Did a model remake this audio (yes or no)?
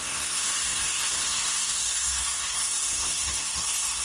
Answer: yes